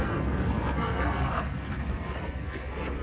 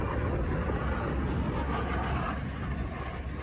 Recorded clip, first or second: second